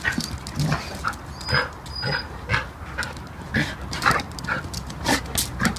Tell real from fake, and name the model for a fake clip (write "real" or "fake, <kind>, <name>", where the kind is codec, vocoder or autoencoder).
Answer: real